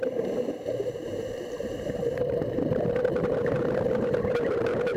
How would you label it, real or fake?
fake